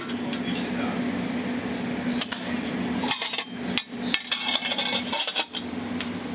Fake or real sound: real